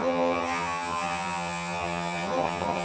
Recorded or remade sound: remade